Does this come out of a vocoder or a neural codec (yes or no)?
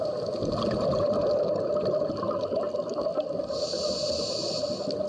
no